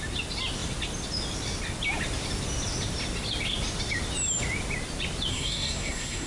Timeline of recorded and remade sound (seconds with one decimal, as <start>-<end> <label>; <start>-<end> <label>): 0.0-5.3 recorded; 5.3-6.3 remade